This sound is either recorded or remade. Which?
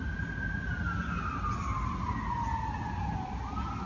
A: recorded